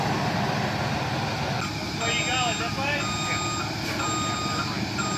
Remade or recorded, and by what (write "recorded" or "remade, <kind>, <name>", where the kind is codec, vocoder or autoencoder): recorded